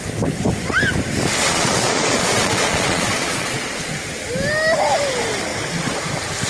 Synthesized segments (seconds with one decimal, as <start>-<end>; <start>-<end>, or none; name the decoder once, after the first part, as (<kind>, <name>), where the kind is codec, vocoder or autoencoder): 1.4-3.9 (vocoder, Vocos)